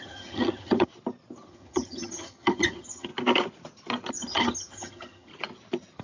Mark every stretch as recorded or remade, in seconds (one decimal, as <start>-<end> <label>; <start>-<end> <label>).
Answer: 0.0-0.9 remade; 0.9-1.5 recorded; 1.5-3.1 remade; 3.1-4.1 recorded; 4.1-5.3 remade; 5.3-6.0 recorded